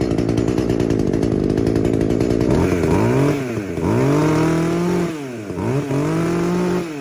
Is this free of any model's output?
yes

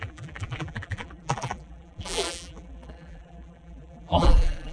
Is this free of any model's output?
no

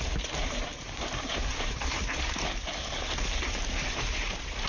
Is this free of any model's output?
no